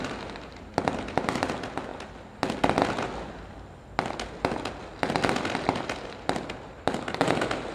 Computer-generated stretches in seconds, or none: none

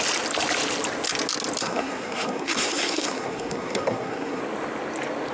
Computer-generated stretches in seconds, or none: 1.6-4.4 (codec, SNAC)